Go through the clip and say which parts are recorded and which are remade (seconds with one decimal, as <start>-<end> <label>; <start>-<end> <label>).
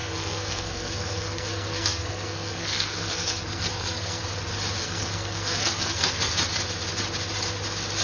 0.0-4.2 remade; 4.2-4.8 recorded; 4.8-6.3 remade; 6.3-8.0 recorded